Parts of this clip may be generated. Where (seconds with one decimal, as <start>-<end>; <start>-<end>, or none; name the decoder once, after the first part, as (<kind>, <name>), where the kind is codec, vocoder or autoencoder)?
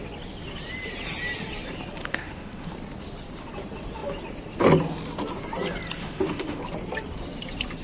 2.0-2.7 (autoencoder, DAC-VAE); 6.0-6.6